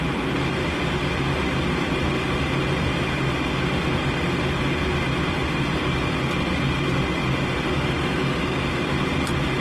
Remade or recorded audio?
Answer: recorded